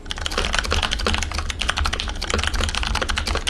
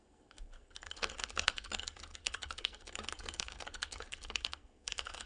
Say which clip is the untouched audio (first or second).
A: first